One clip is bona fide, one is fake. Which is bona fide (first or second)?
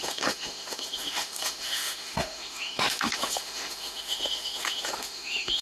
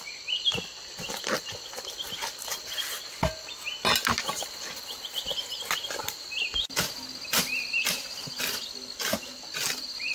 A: second